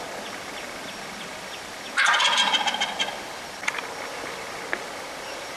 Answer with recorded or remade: recorded